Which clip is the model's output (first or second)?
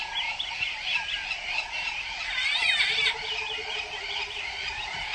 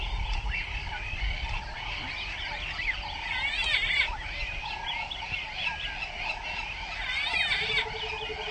first